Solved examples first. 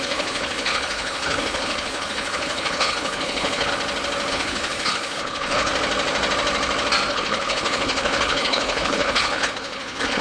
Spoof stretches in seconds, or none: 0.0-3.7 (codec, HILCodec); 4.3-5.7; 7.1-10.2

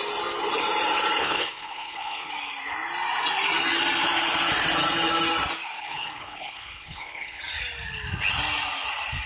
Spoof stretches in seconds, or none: 1.2-2.3 (codec, HILCodec); 5.8-7.4

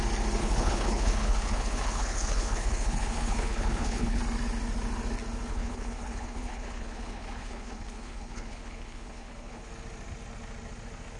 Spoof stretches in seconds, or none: 0.4-4.2 (codec, HILCodec); 5.5-9.7

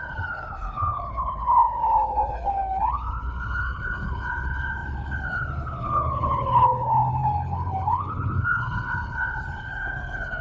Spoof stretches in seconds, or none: 0.0-10.4 (codec, HILCodec)

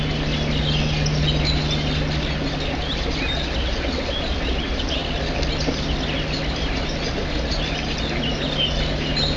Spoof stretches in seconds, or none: none

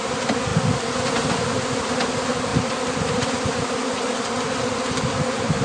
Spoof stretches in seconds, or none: none

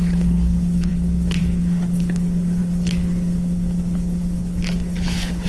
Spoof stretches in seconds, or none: 0.0-5.5 (codec, HILCodec)